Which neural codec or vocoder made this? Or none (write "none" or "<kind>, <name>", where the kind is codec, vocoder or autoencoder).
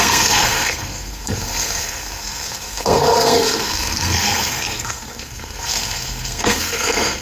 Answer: codec, SNAC